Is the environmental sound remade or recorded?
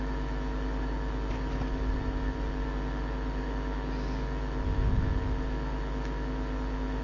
recorded